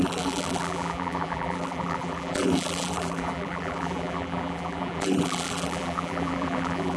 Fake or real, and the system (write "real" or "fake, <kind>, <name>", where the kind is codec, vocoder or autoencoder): fake, vocoder, BigVGAN v2